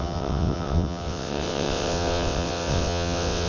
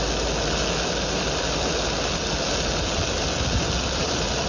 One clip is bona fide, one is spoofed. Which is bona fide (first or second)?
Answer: second